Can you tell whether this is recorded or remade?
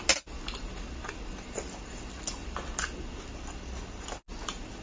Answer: recorded